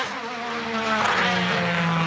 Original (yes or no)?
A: yes